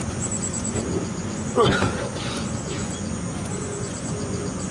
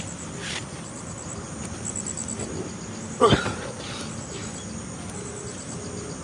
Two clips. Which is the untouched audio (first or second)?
second